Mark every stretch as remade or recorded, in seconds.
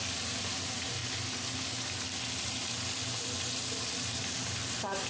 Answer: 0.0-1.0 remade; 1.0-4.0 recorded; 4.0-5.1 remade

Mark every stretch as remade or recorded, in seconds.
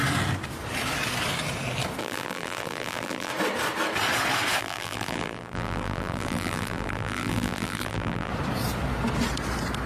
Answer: 0.0-2.0 recorded; 2.0-3.3 remade; 3.3-4.6 recorded; 4.6-8.3 remade; 8.3-9.9 recorded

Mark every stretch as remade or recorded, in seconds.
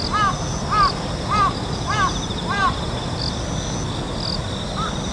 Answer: 0.0-5.1 recorded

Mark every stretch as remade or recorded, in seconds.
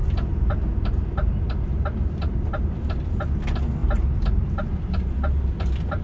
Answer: 0.0-3.2 remade; 3.2-3.8 recorded; 3.8-5.0 remade; 5.0-6.0 recorded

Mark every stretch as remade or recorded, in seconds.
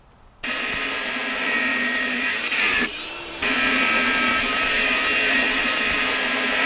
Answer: 0.0-6.7 remade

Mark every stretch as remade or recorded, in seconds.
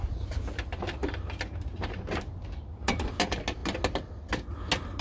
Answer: 0.0-0.7 recorded; 0.7-3.2 remade; 3.2-5.0 recorded